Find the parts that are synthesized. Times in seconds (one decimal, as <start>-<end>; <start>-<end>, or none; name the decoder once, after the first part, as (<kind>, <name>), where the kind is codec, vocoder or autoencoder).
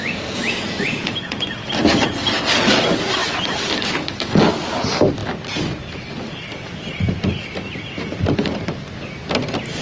0.0-1.4 (vocoder, Vocos)